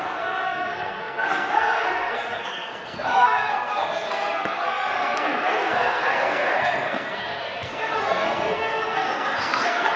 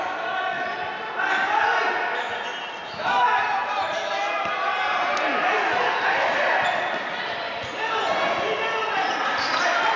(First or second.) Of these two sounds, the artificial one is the first